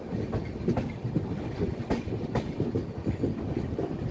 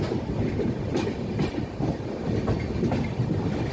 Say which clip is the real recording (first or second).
first